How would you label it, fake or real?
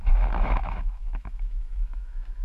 fake